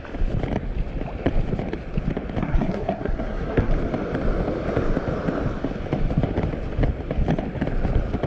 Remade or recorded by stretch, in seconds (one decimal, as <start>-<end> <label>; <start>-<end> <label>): 0.0-2.4 recorded; 2.4-3.7 remade; 3.7-8.3 recorded